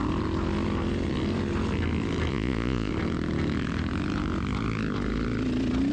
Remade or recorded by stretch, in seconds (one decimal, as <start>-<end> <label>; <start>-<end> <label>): 0.0-2.3 recorded; 2.3-2.9 remade; 2.9-5.9 recorded